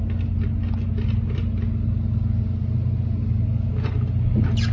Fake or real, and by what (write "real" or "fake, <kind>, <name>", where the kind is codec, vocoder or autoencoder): real